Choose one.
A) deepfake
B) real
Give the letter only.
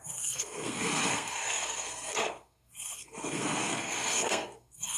A